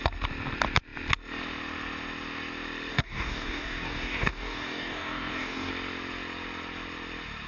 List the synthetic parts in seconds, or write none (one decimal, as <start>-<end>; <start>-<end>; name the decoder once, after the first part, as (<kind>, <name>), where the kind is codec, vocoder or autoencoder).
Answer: 2.9-5.7 (codec, DAC)